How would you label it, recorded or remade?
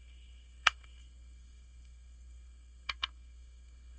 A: remade